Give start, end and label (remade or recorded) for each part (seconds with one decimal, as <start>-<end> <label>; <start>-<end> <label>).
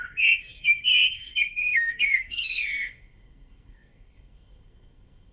0.0-5.3 remade